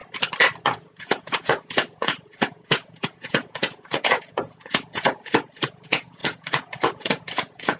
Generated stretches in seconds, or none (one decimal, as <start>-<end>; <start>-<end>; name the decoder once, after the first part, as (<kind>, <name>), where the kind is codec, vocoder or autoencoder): 0.7-7.8 (vocoder, Vocos)